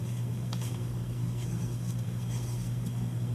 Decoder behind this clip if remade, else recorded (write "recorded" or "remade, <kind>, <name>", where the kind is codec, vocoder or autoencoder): remade, codec, SNAC